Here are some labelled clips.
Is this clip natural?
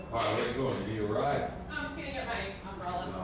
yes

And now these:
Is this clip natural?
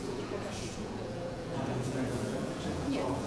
no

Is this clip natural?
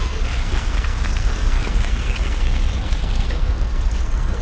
no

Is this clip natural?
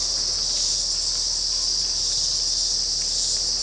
yes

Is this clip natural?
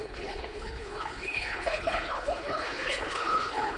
no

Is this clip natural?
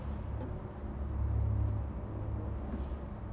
yes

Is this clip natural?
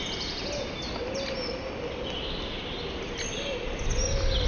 yes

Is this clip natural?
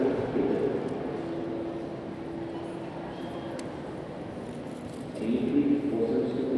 yes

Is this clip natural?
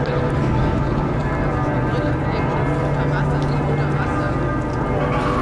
yes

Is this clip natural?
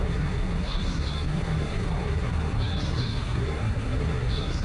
no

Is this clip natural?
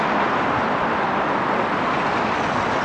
yes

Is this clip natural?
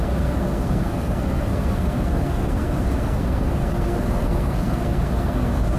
no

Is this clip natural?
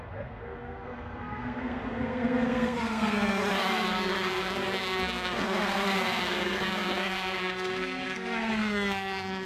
no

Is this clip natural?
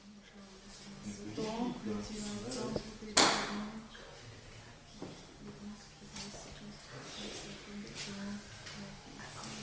yes